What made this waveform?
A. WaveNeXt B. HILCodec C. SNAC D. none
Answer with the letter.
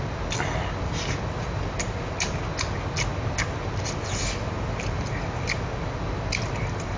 D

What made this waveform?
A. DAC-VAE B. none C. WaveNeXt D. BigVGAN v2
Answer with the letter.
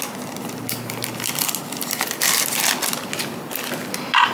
B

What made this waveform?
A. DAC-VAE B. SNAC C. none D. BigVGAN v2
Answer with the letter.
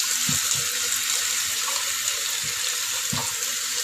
C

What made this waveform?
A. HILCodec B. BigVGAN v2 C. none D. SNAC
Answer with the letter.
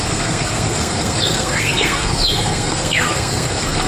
D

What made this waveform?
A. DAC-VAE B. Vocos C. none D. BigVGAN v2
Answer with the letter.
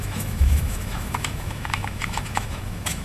A